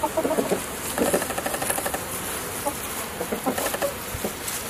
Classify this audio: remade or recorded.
recorded